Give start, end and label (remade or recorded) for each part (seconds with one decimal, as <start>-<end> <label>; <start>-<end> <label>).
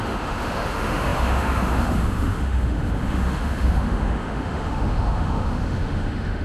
0.0-6.4 remade